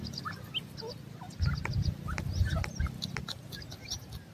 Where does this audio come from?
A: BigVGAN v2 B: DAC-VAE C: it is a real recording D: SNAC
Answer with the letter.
C